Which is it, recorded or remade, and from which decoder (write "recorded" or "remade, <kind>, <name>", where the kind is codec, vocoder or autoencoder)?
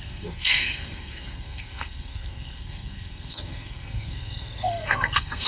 remade, codec, SNAC